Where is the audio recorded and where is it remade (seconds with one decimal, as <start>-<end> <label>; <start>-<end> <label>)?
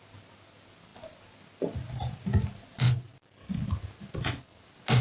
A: 0.0-5.0 recorded